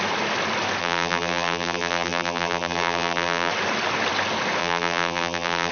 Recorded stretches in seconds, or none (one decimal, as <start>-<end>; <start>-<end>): 0.0-0.8; 3.5-4.6